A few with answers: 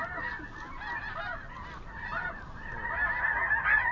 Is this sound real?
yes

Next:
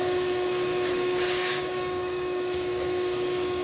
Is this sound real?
no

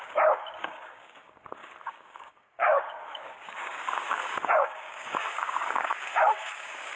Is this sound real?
no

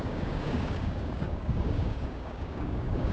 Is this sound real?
no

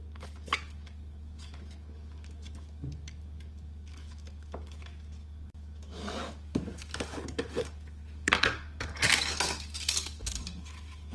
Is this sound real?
no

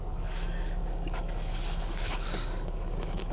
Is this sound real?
no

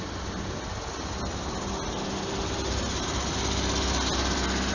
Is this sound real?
yes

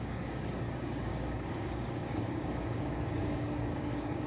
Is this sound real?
no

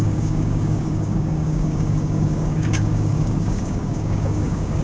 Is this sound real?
no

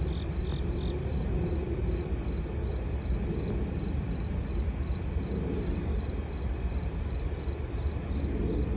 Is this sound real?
yes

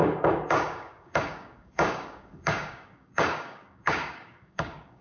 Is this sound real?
no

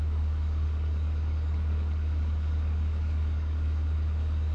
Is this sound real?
no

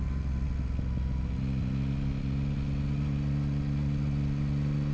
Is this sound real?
yes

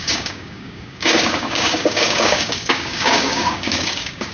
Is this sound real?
no